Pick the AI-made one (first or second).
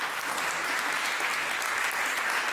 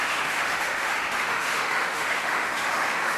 second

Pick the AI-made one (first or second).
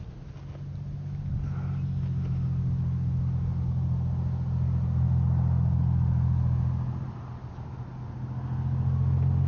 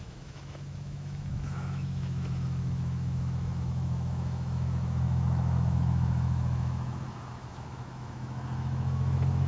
second